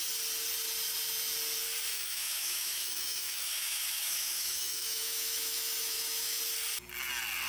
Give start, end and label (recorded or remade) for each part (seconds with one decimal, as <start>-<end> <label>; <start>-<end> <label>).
0.0-1.9 recorded; 1.9-6.4 remade; 6.4-7.5 recorded